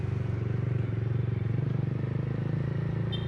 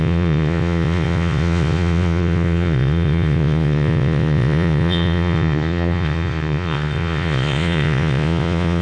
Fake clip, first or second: second